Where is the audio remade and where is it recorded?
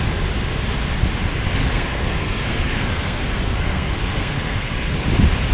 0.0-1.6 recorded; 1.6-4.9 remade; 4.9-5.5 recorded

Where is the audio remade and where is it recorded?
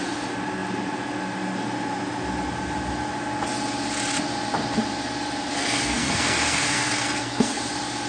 0.0-5.5 recorded; 5.5-7.6 remade; 7.6-8.1 recorded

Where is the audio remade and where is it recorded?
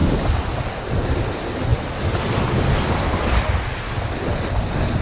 0.0-5.0 recorded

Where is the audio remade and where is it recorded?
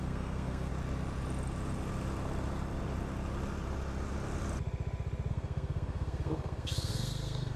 0.0-0.7 remade; 0.7-5.3 recorded; 5.3-7.6 remade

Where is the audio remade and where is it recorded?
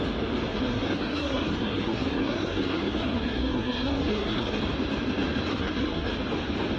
0.0-0.5 recorded; 0.5-4.6 remade; 4.6-5.5 recorded; 5.5-6.1 remade; 6.1-6.8 recorded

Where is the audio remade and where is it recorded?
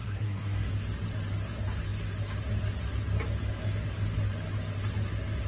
0.0-0.7 remade; 0.7-5.5 recorded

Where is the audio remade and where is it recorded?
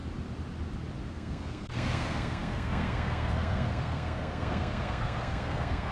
0.0-1.1 recorded; 1.1-5.9 remade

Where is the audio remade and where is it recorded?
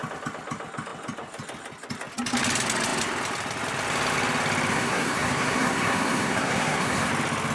0.0-4.7 recorded; 4.7-7.1 remade; 7.1-7.5 recorded